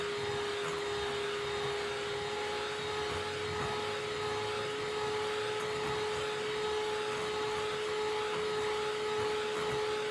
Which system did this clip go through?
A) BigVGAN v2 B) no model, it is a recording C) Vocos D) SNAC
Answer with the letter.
B